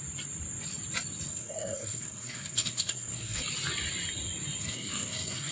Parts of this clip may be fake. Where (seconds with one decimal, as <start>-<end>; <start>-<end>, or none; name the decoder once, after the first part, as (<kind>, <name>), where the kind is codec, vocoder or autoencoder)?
1.3-3.4 (codec, SNAC); 4.6-5.5

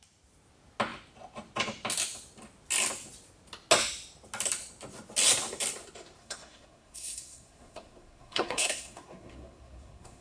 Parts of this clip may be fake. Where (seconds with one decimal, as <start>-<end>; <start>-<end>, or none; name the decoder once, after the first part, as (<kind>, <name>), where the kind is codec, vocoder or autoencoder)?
6.2-10.2 (codec, SNAC)

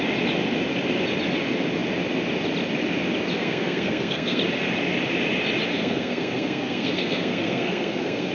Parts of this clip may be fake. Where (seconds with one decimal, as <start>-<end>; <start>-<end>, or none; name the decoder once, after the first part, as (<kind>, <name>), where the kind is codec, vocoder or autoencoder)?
3.3-4.4 (codec, SNAC); 5.7-8.3

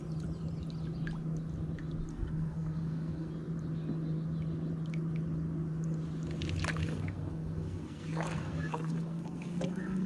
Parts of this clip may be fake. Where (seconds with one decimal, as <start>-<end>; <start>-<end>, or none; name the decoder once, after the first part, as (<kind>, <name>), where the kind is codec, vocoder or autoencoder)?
2.1-3.3 (codec, SNAC); 6.8-10.1

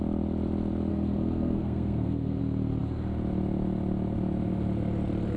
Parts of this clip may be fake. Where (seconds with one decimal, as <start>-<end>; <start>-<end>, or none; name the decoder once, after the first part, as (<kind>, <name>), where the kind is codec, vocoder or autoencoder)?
0.9-2.4 (codec, SNAC)